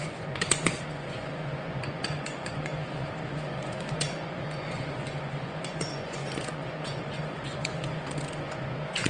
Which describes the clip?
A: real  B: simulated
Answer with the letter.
B